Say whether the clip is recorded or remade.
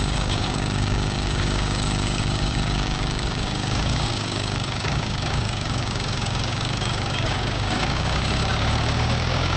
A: remade